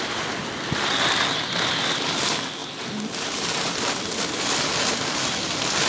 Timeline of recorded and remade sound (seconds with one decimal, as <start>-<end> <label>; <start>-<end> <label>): 0.0-5.9 recorded